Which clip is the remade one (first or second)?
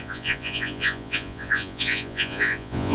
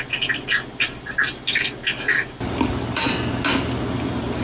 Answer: first